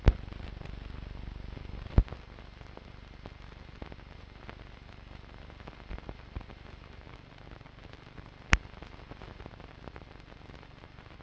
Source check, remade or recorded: recorded